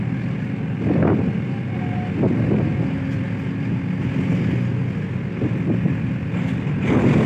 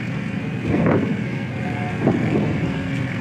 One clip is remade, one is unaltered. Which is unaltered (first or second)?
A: first